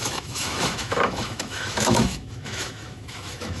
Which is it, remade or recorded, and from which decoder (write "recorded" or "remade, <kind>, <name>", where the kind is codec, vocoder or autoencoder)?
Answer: remade, autoencoder, DAC-VAE